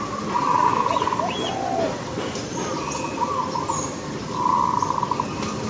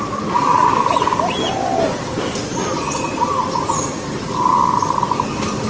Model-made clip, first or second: second